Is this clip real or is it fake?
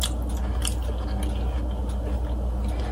real